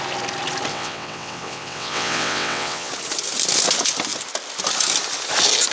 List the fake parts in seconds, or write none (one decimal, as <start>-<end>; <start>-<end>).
0.7-2.9

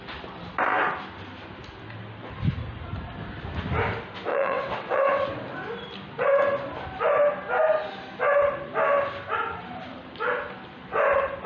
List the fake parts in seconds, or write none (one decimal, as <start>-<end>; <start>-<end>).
4.3-5.3